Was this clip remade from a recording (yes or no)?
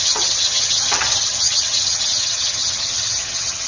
yes